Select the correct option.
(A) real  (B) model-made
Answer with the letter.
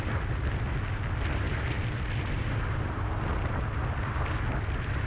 A